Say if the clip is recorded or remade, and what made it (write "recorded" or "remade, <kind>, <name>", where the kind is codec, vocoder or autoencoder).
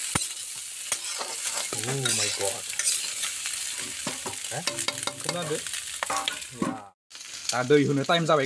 recorded